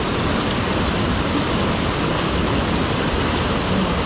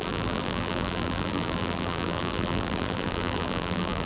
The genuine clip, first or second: first